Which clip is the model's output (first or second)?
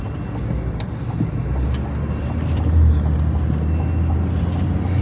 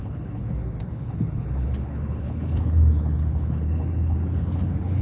second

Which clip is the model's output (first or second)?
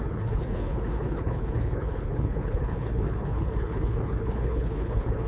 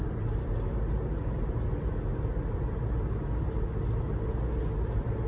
first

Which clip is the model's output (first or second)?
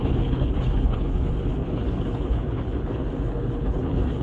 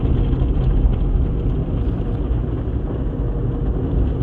first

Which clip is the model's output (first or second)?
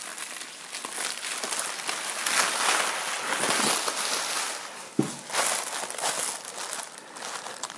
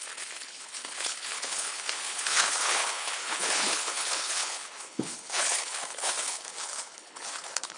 second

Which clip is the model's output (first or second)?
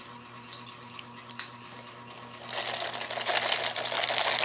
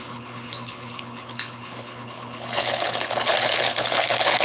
second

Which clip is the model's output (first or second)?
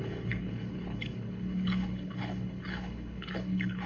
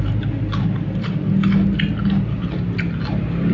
first